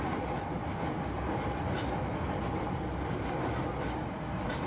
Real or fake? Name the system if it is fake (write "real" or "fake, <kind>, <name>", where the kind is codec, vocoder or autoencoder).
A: real